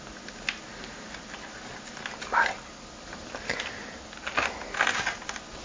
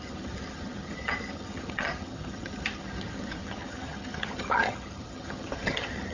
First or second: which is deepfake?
second